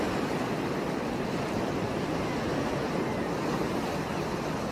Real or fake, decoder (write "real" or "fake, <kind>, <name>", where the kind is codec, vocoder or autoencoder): real